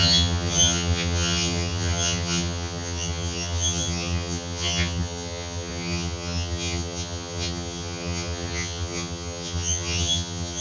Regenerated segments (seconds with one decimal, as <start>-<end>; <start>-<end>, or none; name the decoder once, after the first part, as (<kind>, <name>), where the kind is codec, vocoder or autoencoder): 0.0-10.6 (vocoder, HiFi-GAN)